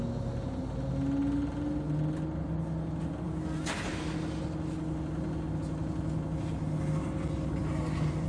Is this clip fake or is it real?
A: real